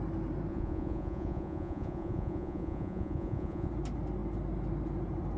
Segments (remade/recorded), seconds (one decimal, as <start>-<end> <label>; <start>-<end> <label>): 0.0-0.5 recorded; 0.5-3.7 remade; 3.7-5.4 recorded